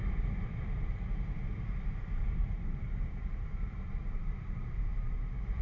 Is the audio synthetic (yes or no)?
yes